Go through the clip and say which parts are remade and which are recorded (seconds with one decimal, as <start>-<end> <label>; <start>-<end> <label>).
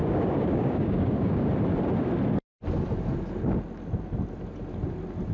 0.0-1.5 remade; 1.5-5.3 recorded